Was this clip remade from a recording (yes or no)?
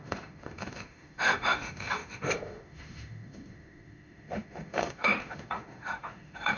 yes